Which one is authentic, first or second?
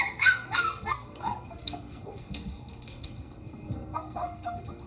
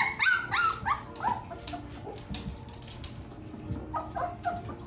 second